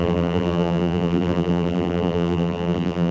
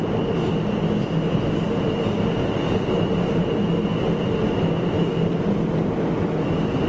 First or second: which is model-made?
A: first